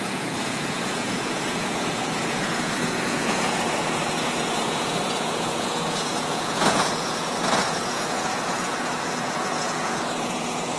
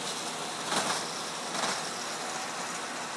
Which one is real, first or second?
second